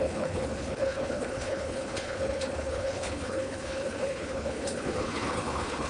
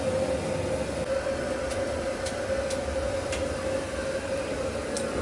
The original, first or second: second